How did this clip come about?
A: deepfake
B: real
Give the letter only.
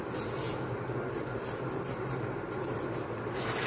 B